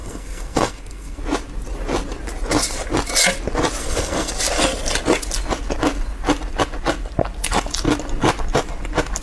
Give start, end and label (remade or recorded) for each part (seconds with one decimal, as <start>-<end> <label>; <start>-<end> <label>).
0.0-1.2 remade; 1.2-3.8 recorded; 3.8-4.3 remade; 4.3-9.2 recorded